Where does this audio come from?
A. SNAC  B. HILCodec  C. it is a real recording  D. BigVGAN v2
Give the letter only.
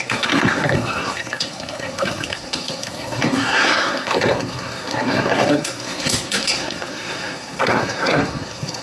A